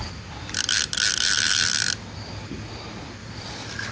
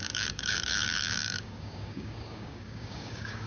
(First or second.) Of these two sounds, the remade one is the second